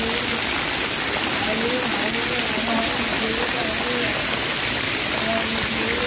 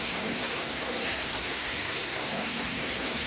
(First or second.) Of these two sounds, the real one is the first